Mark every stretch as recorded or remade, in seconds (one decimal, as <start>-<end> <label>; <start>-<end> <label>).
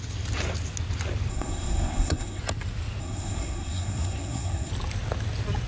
0.0-1.3 recorded; 1.3-2.4 remade; 2.4-3.0 recorded; 3.0-4.7 remade; 4.7-5.7 recorded